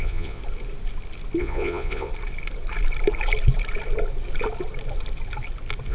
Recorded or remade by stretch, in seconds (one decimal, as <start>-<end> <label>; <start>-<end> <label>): 0.0-0.4 remade; 0.4-1.4 recorded; 1.4-2.1 remade; 2.1-5.9 recorded